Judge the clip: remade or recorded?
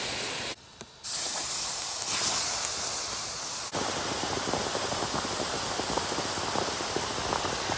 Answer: recorded